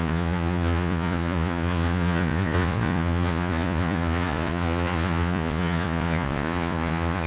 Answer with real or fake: fake